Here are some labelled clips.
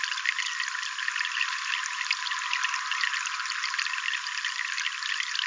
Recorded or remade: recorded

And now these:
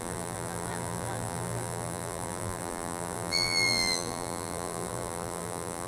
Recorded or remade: remade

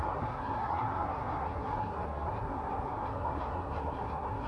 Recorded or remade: remade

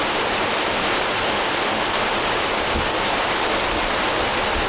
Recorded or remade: recorded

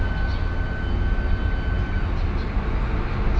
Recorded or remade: recorded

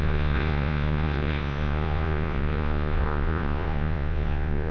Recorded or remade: remade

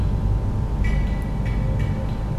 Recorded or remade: recorded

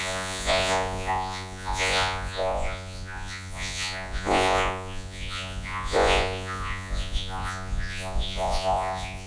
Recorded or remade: remade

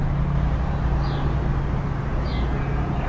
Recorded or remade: recorded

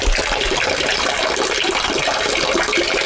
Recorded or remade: recorded